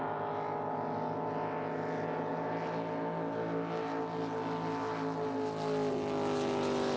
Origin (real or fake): real